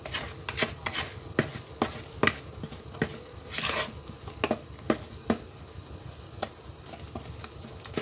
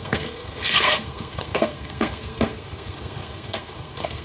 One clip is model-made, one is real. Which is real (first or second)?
first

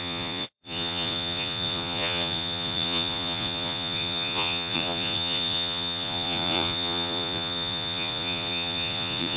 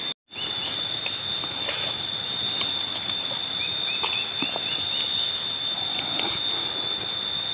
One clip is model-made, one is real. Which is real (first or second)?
second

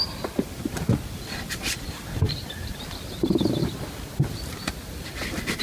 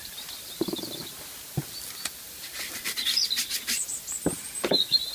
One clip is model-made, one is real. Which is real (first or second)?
second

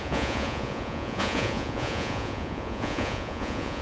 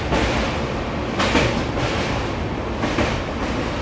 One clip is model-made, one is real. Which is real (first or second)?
second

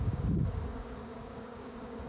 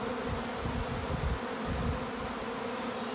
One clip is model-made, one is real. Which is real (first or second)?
second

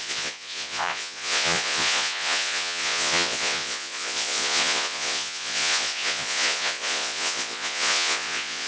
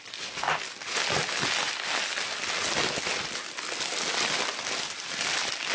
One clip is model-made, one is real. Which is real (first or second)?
second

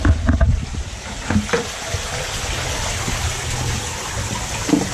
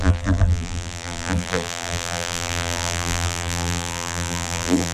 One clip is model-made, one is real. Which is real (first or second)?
first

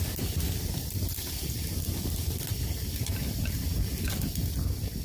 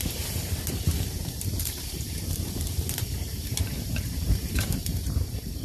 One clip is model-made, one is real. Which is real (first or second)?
first